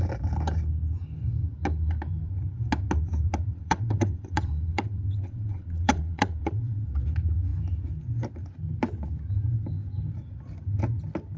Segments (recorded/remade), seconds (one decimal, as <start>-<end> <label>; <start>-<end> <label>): 0.0-3.5 recorded; 3.5-6.9 remade; 6.9-11.4 recorded